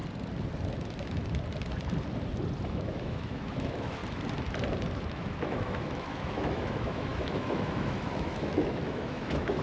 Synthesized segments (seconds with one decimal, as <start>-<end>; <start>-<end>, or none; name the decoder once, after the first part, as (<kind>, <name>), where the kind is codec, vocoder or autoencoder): 2.7-4.0 (autoencoder, DAC-VAE); 5.1-9.6